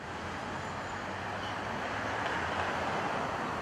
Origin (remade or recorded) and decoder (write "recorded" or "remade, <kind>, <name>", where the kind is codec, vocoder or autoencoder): recorded